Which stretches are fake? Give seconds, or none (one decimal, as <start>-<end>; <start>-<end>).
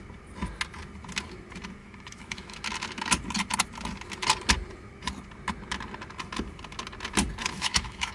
1.8-2.6; 7.4-8.1